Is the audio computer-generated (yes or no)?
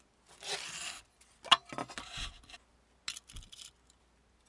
no